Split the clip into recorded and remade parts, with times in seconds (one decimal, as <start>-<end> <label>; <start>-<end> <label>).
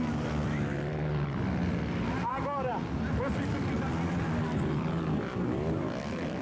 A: 0.0-6.4 recorded